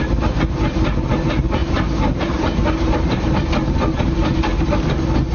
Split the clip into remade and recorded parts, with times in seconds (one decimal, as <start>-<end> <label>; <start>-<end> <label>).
0.0-1.6 recorded; 1.6-3.5 remade; 3.5-5.3 recorded